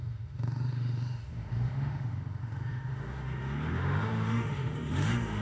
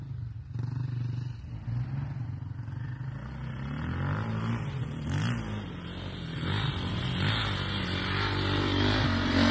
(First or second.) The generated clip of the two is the first